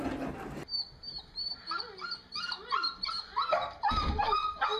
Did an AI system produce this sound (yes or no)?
no